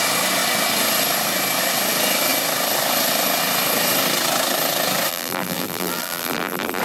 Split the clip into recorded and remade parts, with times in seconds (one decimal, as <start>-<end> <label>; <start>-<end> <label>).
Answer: 0.0-5.1 recorded; 5.1-6.8 remade